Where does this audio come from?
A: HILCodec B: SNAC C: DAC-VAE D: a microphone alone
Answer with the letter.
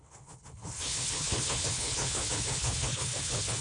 A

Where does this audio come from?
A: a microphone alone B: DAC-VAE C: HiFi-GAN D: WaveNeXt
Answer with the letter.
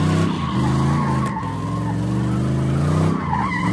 A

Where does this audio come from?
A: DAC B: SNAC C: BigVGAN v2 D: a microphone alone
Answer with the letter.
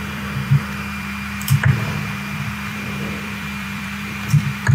C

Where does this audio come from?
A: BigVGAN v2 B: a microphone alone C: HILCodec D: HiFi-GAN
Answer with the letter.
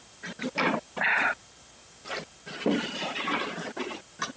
B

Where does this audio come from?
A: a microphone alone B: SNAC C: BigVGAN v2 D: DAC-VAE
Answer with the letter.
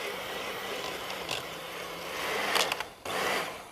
A